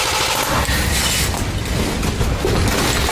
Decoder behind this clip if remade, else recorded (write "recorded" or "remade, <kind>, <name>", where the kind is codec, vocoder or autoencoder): recorded